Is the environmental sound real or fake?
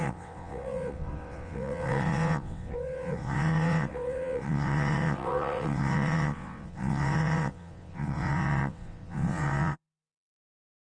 fake